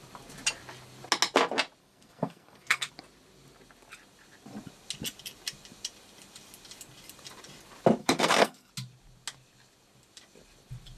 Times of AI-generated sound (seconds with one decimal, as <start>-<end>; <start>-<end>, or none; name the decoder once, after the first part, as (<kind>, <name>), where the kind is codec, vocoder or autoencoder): 1.8-2.9 (codec, SNAC); 8.0-8.7